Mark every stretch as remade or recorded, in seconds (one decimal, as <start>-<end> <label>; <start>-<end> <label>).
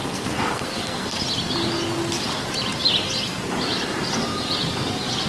0.0-1.2 remade; 1.2-5.3 recorded